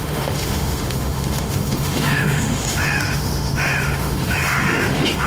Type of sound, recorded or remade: remade